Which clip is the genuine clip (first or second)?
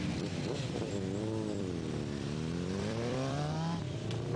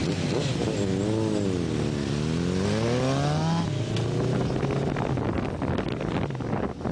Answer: second